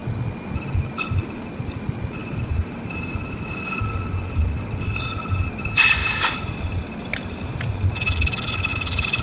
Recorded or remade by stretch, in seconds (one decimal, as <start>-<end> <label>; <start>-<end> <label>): 0.0-2.2 recorded; 2.2-3.7 remade; 3.7-6.0 recorded; 6.0-7.6 remade; 7.6-8.7 recorded; 8.7-9.2 remade